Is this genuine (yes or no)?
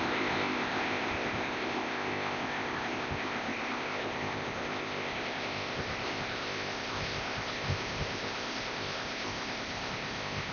no